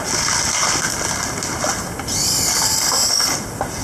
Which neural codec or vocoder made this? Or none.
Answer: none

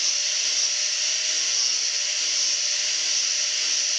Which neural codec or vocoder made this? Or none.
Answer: none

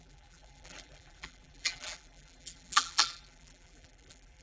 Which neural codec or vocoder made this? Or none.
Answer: vocoder, BigVGAN v2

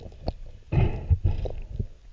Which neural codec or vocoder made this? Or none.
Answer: none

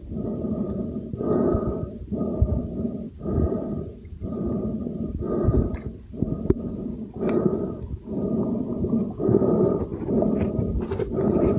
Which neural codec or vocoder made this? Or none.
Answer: vocoder, BigVGAN v2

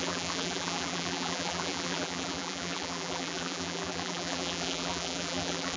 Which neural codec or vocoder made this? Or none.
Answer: vocoder, BigVGAN v2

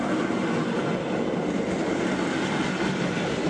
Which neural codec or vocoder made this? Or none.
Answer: none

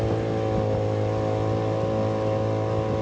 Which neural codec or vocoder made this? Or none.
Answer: none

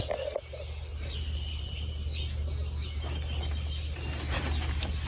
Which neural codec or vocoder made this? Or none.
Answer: none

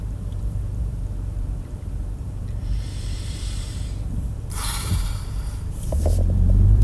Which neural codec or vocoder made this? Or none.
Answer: vocoder, BigVGAN v2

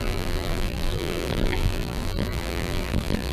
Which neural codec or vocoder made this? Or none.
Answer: vocoder, BigVGAN v2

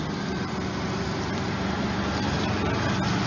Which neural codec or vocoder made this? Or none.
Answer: none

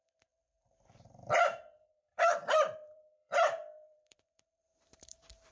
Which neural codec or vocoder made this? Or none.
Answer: vocoder, BigVGAN v2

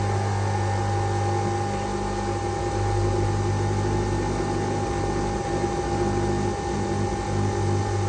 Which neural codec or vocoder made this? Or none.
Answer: none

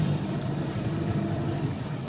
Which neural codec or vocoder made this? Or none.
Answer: vocoder, BigVGAN v2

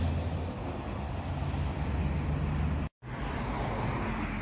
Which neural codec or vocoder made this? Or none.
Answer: none